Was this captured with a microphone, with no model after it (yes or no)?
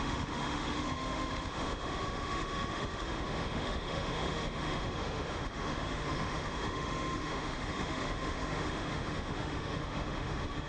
no